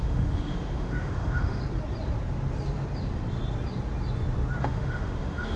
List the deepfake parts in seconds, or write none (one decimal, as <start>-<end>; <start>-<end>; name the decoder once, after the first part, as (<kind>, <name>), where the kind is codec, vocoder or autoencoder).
0.0-1.6 (autoencoder, DAC-VAE); 4.6-5.6